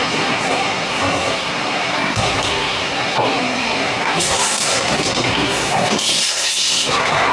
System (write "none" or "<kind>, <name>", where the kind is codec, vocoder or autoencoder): codec, SNAC